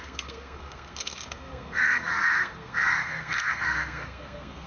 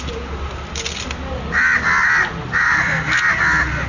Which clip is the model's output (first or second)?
first